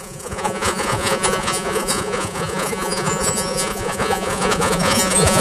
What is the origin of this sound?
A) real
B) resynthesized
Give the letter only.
B